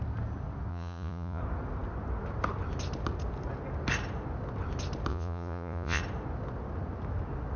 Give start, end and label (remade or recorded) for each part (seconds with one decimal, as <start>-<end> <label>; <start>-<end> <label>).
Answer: 0.0-0.7 recorded; 0.7-1.4 remade; 1.4-5.1 recorded; 5.1-6.0 remade; 6.0-7.6 recorded